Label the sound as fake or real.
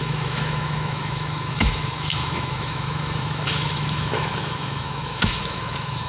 fake